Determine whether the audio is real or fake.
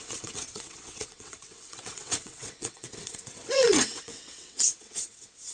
fake